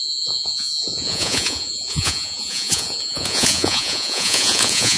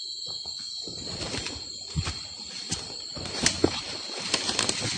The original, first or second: second